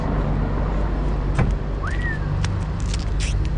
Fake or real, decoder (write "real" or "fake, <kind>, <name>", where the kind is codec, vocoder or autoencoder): real